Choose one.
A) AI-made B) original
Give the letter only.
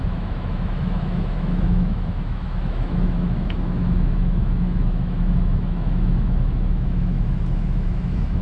A